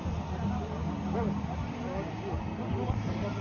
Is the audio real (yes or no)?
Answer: yes